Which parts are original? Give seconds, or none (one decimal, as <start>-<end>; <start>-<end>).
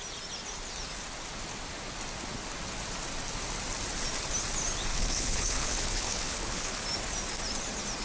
0.0-4.9; 6.8-8.0